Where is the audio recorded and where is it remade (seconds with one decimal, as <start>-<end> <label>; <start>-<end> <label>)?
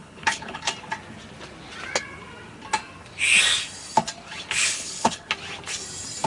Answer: 0.0-0.7 remade; 0.7-4.6 recorded; 4.6-5.3 remade; 5.3-6.3 recorded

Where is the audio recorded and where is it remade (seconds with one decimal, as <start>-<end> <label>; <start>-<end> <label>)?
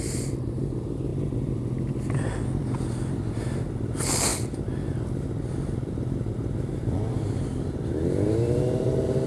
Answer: 0.0-9.3 recorded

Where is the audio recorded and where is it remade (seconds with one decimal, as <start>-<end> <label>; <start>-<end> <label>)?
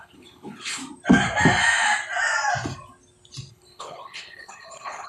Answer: 0.0-0.8 remade; 0.8-3.5 recorded; 3.5-5.1 remade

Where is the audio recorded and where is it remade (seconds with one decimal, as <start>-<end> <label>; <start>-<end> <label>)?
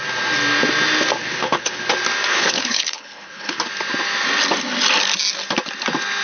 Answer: 0.0-1.2 recorded; 1.2-1.8 remade; 1.8-2.3 recorded; 2.3-3.6 remade; 3.6-6.2 recorded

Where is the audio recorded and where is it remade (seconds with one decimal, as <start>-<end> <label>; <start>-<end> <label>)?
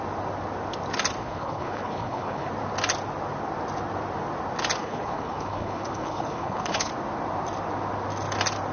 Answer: 0.0-1.2 recorded; 1.2-2.5 remade; 2.5-4.8 recorded; 4.8-6.9 remade; 6.9-8.7 recorded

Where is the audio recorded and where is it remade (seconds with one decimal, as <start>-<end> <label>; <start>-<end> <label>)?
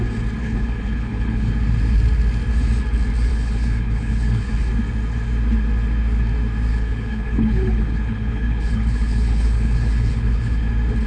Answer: 0.0-0.4 recorded; 0.4-1.5 remade; 1.5-3.3 recorded; 3.3-4.5 remade; 4.5-6.7 recorded; 6.7-10.7 remade; 10.7-11.1 recorded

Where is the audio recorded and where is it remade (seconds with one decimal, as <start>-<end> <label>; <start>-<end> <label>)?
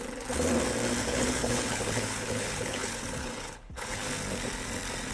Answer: 0.0-1.0 recorded; 1.0-4.1 remade; 4.1-5.1 recorded